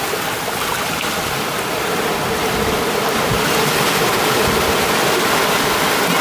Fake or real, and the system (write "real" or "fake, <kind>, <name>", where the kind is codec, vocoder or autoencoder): fake, vocoder, BigVGAN v2